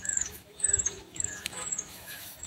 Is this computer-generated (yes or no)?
yes